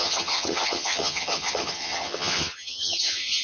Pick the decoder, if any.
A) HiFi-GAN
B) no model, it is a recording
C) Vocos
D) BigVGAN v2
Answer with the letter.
A